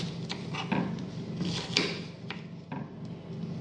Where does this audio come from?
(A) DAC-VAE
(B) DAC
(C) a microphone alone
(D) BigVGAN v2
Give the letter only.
C